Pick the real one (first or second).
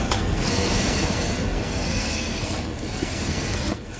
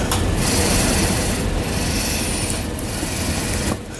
second